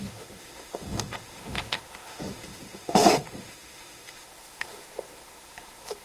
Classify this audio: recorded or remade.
remade